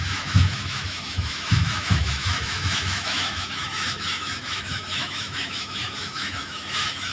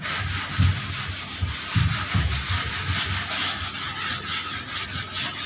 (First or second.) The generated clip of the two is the first